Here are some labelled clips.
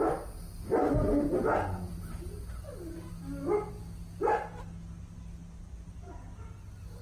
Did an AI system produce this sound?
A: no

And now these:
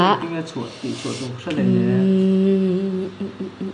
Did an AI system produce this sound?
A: no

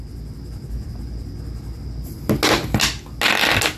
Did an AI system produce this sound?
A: no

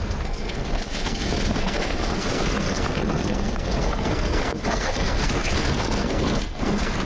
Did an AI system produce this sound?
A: yes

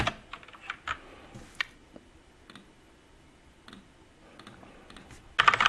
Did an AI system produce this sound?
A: no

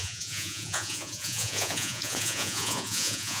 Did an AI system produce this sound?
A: yes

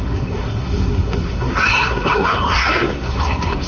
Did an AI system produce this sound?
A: yes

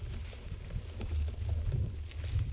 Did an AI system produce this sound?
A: no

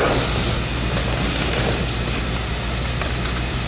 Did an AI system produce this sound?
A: no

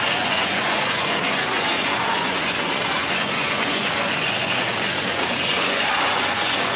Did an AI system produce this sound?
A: yes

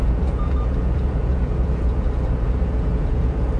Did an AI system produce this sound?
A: yes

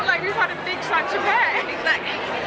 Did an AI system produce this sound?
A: no